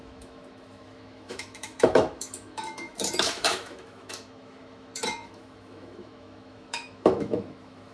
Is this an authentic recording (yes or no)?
no